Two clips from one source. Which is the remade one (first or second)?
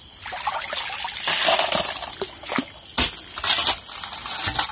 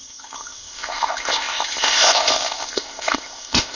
second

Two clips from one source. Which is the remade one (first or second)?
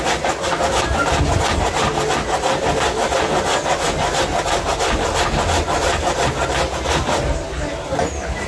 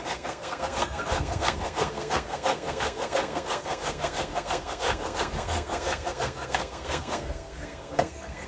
second